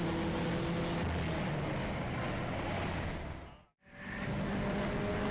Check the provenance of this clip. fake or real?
real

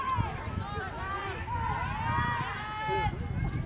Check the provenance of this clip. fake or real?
real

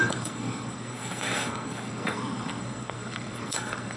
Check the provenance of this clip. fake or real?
fake